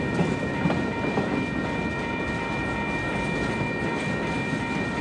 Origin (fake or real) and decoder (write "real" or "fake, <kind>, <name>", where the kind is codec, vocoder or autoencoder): real